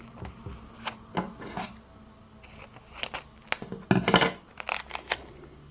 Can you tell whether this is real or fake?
real